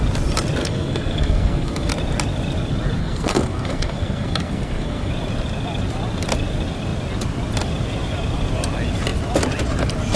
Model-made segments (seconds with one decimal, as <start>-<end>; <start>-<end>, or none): 0.6-1.9; 3.0-5.1